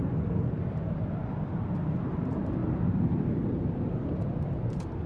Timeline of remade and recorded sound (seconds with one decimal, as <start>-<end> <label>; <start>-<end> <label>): 0.0-1.9 recorded; 1.9-2.6 remade; 2.6-3.3 recorded; 3.3-5.1 remade